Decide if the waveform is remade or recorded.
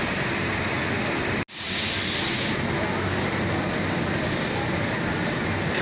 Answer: recorded